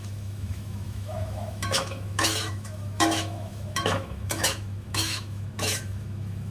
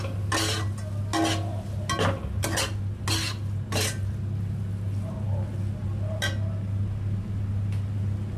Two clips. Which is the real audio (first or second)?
second